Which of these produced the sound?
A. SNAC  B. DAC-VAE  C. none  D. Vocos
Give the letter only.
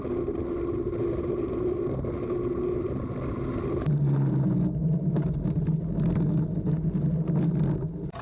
C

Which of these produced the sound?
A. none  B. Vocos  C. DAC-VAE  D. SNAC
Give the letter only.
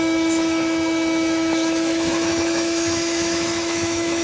C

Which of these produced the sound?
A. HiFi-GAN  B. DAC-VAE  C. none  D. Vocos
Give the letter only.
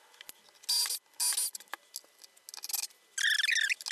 C